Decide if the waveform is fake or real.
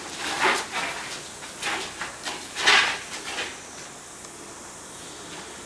real